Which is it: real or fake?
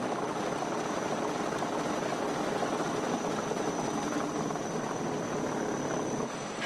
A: real